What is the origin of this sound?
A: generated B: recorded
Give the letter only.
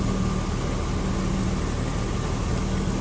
B